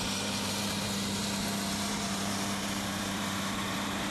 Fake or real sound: fake